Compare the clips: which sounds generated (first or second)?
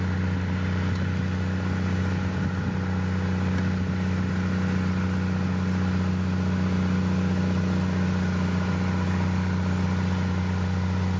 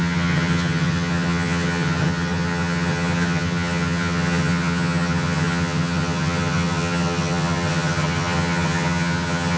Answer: second